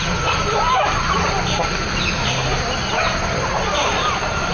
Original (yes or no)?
yes